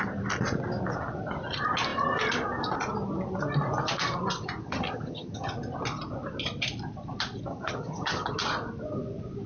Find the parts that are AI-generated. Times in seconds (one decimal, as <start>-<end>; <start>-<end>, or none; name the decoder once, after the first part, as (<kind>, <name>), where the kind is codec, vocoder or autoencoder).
4.6-5.5 (vocoder, HiFi-GAN); 7.5-8.3